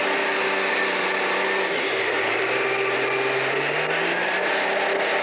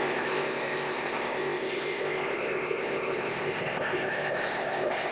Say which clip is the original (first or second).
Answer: first